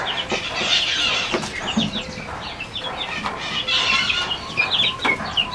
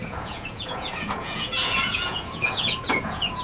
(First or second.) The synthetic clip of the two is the second